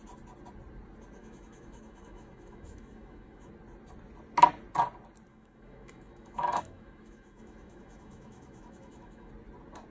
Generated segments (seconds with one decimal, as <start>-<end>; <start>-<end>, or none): 1.2-3.5; 5.3-9.3

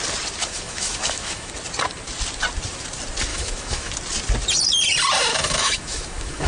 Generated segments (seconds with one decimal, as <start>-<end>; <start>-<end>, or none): 0.4-1.5; 3.3-3.9; 5.3-6.5

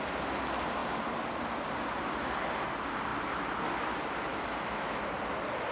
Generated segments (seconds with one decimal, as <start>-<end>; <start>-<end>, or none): 4.3-5.0

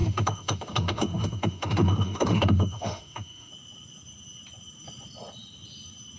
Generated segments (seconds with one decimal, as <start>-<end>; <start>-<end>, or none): 0.0-3.5

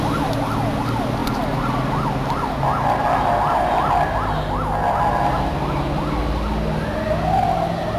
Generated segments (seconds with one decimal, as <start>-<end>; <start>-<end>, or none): none